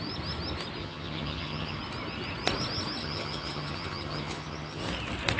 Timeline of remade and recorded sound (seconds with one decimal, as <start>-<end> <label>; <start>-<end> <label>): 0.0-0.8 recorded; 0.8-1.8 remade; 1.8-3.0 recorded; 3.0-4.8 remade; 4.8-5.4 recorded